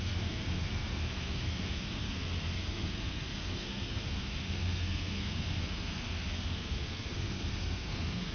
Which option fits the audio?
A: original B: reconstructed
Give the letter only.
B